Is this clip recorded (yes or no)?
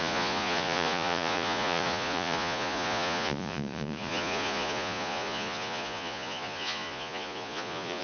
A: no